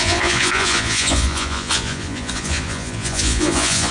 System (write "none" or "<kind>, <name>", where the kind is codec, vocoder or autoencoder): vocoder, Vocos